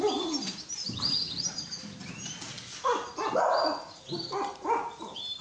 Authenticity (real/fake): real